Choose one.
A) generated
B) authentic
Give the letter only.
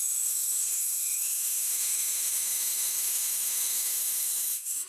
A